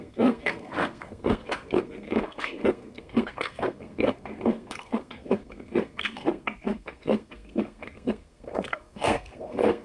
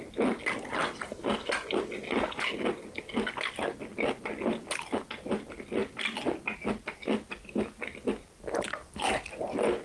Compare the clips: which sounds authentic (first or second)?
second